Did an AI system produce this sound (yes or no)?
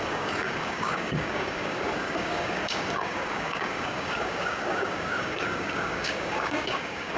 yes